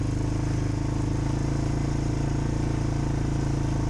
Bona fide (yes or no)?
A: yes